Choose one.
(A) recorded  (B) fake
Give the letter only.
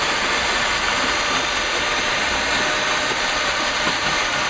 A